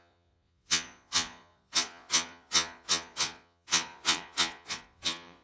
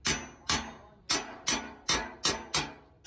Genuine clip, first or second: second